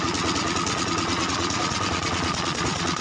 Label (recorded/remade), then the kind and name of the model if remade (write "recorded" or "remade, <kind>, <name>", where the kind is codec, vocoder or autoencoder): remade, vocoder, Vocos